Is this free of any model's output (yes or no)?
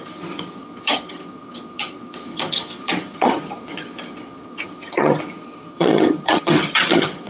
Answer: no